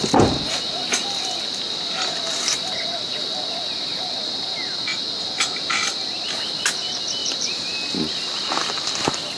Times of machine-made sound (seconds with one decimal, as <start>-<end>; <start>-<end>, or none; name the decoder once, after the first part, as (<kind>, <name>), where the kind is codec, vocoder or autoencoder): 7.2-7.7 (vocoder, BigVGAN v2)